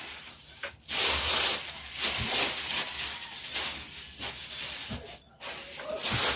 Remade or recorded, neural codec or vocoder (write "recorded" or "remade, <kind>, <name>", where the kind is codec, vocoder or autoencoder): recorded